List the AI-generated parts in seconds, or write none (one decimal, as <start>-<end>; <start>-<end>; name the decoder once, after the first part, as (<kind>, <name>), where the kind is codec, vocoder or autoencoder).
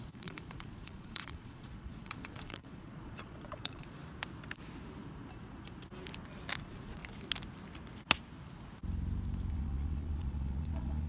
0.0-4.0 (vocoder, Vocos); 6.6-7.0; 9.5-11.1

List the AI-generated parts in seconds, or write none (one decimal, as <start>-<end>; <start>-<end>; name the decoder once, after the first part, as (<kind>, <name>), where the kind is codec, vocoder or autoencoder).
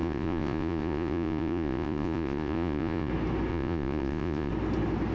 0.0-3.1 (vocoder, Vocos); 3.5-4.5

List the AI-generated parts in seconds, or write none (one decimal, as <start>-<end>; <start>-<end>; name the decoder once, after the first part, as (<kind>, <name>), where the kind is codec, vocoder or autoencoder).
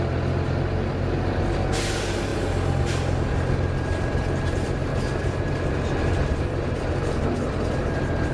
none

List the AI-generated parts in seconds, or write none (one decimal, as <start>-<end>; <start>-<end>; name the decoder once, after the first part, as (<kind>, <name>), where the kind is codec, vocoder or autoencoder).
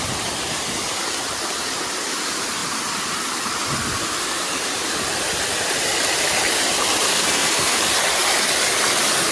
7.1-7.8 (codec, SNAC)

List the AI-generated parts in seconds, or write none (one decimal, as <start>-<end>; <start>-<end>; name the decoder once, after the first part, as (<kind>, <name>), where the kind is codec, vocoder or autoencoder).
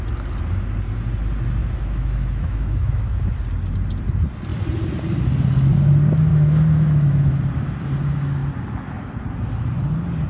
1.6-3.3 (autoencoder, DAC-VAE); 6.3-7.3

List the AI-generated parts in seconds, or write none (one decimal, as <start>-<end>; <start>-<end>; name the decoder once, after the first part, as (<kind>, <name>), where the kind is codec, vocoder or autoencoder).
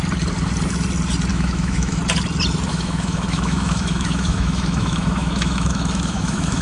1.3-2.0 (autoencoder, DAC-VAE); 2.7-6.6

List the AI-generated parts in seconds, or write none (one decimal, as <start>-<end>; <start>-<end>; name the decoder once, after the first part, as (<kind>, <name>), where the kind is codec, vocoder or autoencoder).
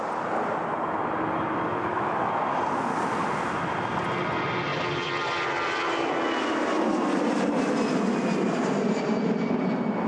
1.7-2.3 (autoencoder, DAC-VAE)